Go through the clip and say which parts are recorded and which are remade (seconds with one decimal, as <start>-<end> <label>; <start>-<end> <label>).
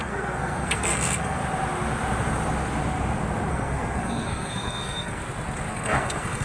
0.0-1.4 remade; 1.4-3.5 recorded; 3.5-5.2 remade; 5.2-5.7 recorded; 5.7-6.4 remade